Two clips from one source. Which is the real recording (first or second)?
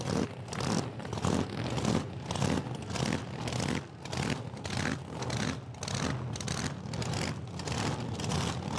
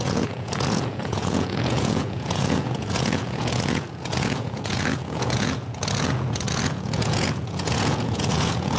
first